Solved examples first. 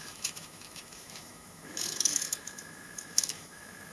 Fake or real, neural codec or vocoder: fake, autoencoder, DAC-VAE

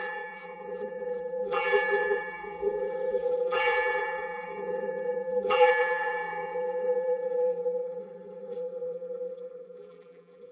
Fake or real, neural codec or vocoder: fake, vocoder, BigVGAN v2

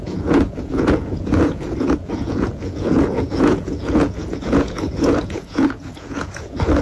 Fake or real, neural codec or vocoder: fake, vocoder, Vocos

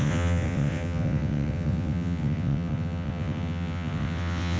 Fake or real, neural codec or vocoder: fake, vocoder, WaveNeXt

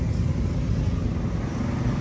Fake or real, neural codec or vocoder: real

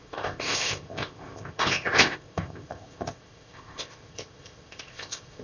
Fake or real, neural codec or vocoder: fake, codec, ZipCodec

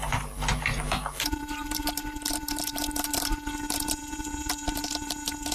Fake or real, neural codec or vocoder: fake, vocoder, BigVGAN v2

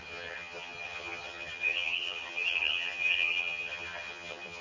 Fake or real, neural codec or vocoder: fake, vocoder, HiFi-GAN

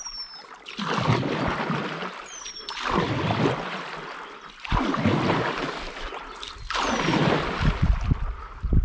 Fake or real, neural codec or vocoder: real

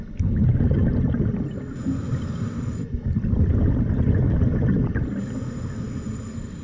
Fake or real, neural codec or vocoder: real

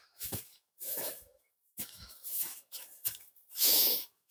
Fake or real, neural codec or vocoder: fake, autoencoder, DAC-VAE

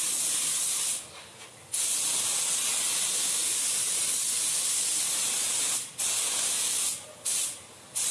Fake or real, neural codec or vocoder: real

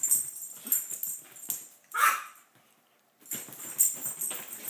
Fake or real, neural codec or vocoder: real